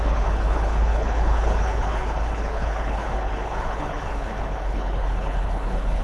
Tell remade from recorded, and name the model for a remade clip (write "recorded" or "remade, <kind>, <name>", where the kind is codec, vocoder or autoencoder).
remade, codec, HILCodec